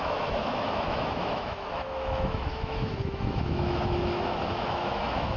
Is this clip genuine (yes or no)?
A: no